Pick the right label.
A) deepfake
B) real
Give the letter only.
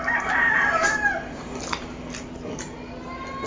B